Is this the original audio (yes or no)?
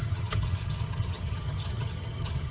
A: no